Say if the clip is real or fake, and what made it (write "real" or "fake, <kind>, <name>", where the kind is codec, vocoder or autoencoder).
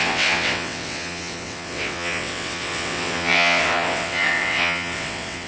fake, vocoder, WaveNeXt